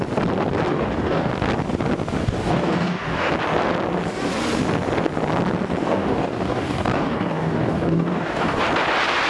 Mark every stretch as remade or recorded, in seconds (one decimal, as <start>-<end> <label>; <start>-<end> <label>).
0.0-0.7 recorded; 0.7-1.3 remade; 1.3-2.2 recorded; 2.2-3.3 remade; 3.3-5.8 recorded; 5.8-8.6 remade; 8.6-9.3 recorded